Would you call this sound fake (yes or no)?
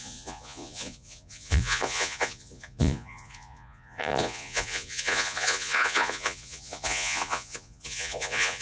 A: yes